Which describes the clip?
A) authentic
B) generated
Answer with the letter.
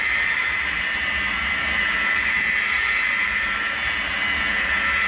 A